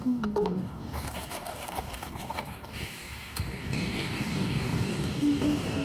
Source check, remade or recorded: remade